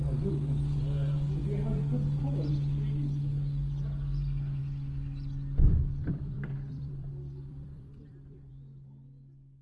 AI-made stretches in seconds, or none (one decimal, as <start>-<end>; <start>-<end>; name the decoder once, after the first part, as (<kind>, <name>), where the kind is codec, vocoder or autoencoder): 4.6-8.5 (vocoder, BigVGAN v2)